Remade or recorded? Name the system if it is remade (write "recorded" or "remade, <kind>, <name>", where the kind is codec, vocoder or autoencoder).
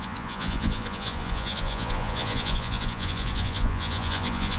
remade, vocoder, Vocos